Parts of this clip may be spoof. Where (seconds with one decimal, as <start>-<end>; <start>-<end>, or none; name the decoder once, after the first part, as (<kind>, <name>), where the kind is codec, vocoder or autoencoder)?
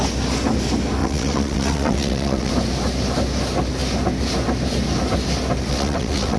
1.0-2.5 (vocoder, WaveNeXt); 5.7-6.4